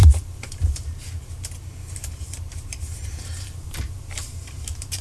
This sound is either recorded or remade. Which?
remade